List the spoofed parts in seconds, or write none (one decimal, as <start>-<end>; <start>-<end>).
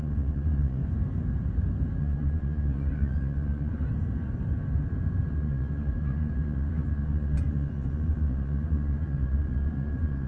0.0-0.8; 2.0-3.8; 5.3-10.3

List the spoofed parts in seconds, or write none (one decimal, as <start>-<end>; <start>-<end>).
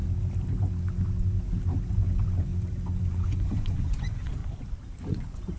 1.9-2.5; 3.1-4.4; 5.0-5.6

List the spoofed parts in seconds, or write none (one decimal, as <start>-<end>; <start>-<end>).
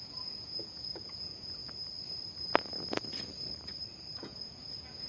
0.0-1.6; 4.2-5.1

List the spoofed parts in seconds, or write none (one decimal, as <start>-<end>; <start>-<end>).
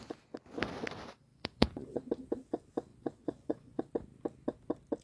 1.3-2.1; 2.9-3.9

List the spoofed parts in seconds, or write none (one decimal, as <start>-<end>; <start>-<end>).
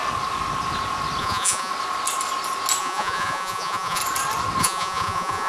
1.2-1.7; 2.8-4.0; 4.6-5.5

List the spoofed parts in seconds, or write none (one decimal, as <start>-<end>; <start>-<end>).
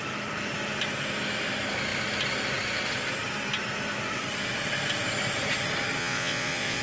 6.0-6.8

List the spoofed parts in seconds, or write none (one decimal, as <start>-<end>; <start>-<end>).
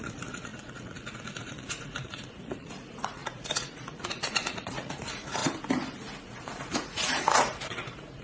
0.0-5.4; 6.2-8.2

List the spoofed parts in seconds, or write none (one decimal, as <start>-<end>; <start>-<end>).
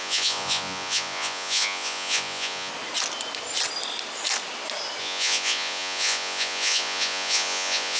0.0-2.7; 5.0-8.0